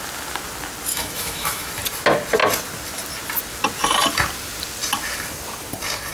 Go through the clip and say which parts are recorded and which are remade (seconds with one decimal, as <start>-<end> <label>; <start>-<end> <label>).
0.0-0.9 recorded; 0.9-1.7 remade; 1.7-6.1 recorded